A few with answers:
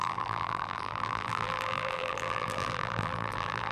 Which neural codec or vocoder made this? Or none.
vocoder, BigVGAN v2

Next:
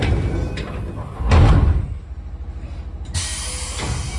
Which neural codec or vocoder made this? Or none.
none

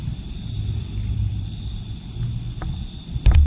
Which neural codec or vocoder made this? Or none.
vocoder, BigVGAN v2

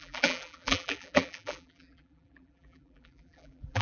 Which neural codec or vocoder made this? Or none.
vocoder, BigVGAN v2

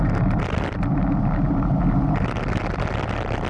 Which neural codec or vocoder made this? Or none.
none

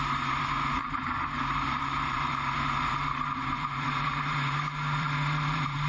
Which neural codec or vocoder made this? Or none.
vocoder, BigVGAN v2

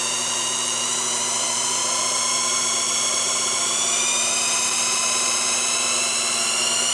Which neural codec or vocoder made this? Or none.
vocoder, BigVGAN v2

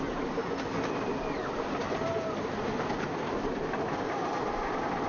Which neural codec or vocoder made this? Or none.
none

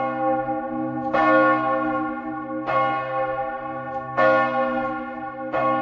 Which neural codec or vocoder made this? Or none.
none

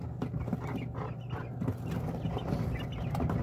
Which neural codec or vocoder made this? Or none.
none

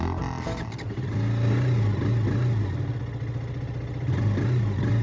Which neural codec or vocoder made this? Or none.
none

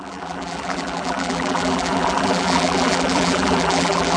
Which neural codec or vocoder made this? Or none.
vocoder, BigVGAN v2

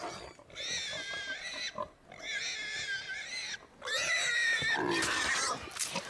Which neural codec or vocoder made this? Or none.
none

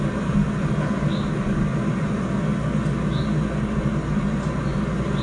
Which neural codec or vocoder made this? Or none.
none